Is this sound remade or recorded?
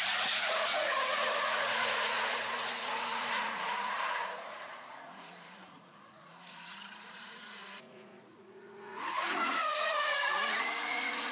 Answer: remade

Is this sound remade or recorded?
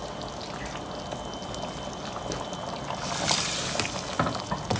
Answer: recorded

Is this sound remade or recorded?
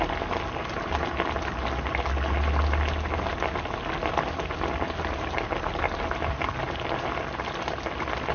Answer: recorded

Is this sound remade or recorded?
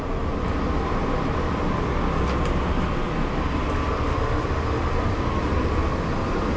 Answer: recorded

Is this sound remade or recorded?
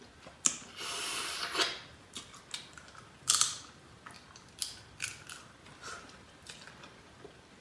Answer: recorded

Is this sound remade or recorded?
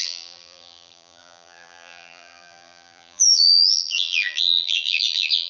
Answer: remade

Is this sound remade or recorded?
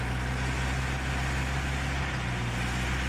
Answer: recorded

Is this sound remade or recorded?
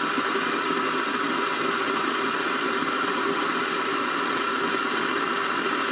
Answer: recorded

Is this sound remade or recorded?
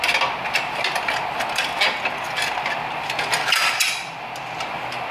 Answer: recorded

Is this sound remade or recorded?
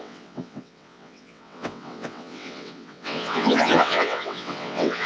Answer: remade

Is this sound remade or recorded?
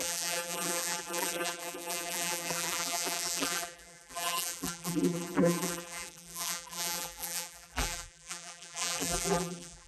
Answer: remade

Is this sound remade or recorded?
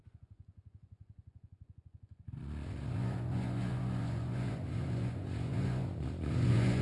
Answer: remade